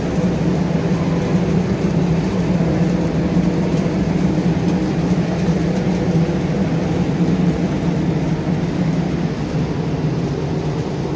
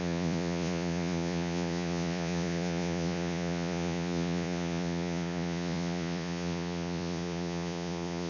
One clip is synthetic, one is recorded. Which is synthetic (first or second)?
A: second